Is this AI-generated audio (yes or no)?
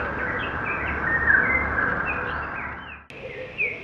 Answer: no